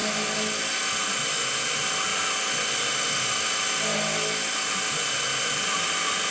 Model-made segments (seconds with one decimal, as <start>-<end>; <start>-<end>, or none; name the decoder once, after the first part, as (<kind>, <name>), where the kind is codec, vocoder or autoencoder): none